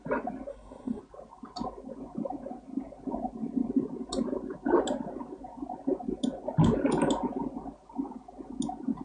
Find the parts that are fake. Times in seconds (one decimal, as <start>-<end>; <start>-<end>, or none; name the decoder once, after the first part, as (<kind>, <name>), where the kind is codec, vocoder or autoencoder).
0.5-1.0 (codec, SNAC)

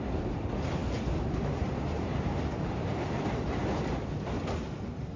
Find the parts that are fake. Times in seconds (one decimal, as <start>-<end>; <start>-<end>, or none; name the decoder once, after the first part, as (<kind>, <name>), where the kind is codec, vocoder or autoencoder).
none